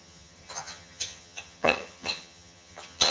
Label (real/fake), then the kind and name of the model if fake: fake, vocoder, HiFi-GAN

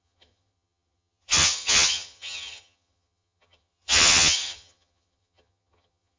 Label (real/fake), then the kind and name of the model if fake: fake, vocoder, HiFi-GAN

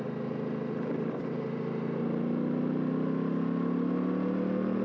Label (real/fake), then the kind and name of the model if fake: real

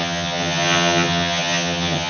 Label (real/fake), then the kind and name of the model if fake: fake, vocoder, HiFi-GAN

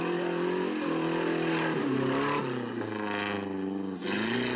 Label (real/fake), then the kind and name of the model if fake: real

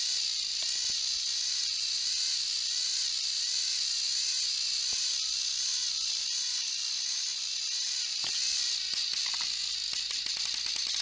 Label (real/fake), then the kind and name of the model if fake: real